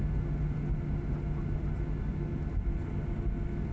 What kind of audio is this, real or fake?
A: real